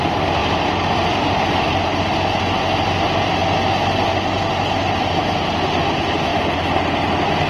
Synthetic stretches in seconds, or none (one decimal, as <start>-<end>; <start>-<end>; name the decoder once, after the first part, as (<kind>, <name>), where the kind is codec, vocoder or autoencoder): 0.4-2.1 (vocoder, BigVGAN v2)